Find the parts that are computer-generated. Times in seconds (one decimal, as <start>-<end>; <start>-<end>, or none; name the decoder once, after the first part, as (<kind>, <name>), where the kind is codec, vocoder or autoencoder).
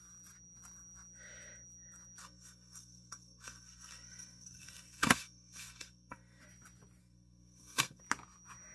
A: 2.2-6.4 (codec, SNAC); 7.0-8.0